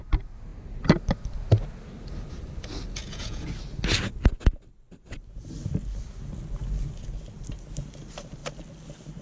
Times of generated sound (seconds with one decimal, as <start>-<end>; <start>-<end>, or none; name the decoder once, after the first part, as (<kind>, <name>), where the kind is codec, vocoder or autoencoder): 3.0-3.5 (vocoder, Vocos)